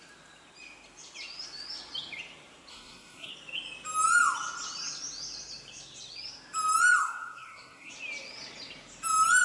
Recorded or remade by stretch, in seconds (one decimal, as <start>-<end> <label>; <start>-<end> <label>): 0.0-2.7 recorded; 2.7-3.3 remade; 3.3-7.0 recorded; 7.0-7.9 remade; 7.9-9.4 recorded

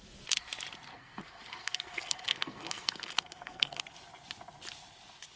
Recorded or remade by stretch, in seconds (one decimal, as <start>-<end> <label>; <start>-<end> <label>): 0.0-0.9 recorded; 0.9-3.8 remade; 3.8-5.4 recorded

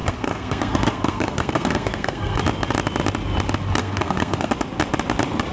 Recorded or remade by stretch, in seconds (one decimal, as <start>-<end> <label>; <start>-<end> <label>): 0.0-2.4 remade; 2.4-3.8 recorded; 3.8-4.5 remade; 4.5-5.5 recorded

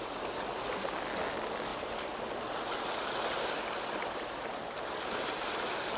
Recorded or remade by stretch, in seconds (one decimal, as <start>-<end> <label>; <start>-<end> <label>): 0.0-6.0 recorded

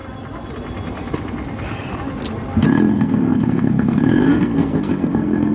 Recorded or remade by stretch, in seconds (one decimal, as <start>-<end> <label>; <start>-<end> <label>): 0.0-2.9 recorded; 2.9-5.5 remade

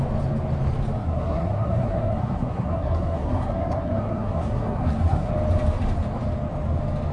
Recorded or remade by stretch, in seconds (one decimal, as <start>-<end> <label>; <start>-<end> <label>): 0.0-1.0 recorded; 1.0-5.3 remade; 5.3-7.1 recorded

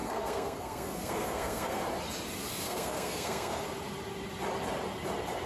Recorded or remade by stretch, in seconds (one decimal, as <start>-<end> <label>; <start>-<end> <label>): 0.0-1.8 remade; 1.8-2.5 recorded; 2.5-3.6 remade; 3.6-5.5 recorded

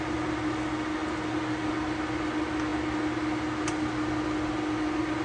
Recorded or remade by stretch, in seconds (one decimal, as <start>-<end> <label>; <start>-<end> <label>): 0.0-5.2 recorded